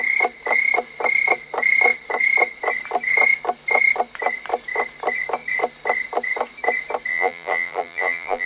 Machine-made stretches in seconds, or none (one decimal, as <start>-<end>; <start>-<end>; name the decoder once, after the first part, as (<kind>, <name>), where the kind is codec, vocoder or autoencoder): 7.1-8.5 (vocoder, BigVGAN v2)